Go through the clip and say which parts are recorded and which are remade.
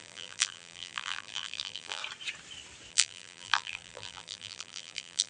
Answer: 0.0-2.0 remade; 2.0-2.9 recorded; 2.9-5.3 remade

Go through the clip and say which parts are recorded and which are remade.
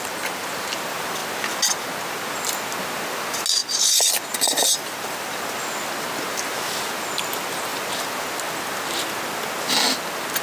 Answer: 0.0-3.6 recorded; 3.6-5.9 remade; 5.9-10.4 recorded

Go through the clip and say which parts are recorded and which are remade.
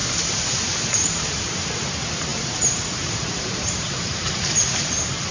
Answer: 0.0-1.9 remade; 1.9-2.3 recorded; 2.3-4.3 remade; 4.3-5.3 recorded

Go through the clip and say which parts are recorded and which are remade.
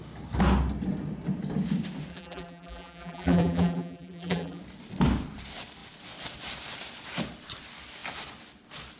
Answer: 0.0-2.1 recorded; 2.1-4.6 remade; 4.6-9.0 recorded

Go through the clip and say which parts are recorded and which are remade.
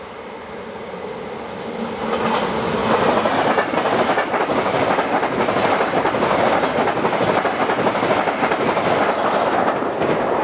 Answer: 0.0-10.4 recorded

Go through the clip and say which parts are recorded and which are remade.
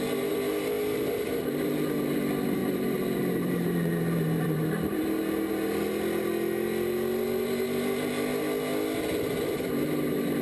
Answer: 0.0-2.6 recorded; 2.6-5.0 remade; 5.0-10.4 recorded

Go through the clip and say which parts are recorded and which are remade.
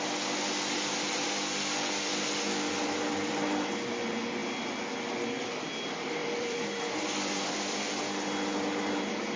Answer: 0.0-6.2 recorded; 6.2-7.9 remade; 7.9-9.4 recorded